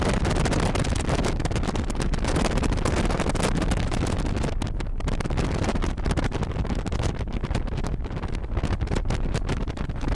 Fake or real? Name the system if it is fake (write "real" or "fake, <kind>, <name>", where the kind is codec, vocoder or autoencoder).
real